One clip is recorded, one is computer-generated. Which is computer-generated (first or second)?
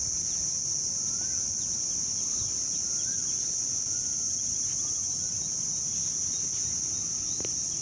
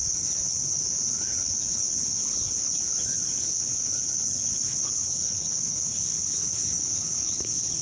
second